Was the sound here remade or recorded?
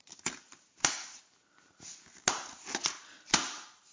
recorded